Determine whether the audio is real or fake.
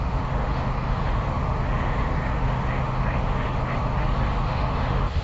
fake